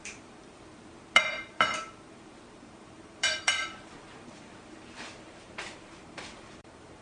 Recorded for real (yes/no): no